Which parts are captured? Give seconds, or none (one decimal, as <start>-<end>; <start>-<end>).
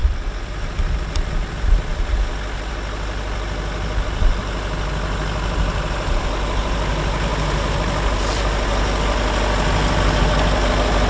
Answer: 0.0-11.1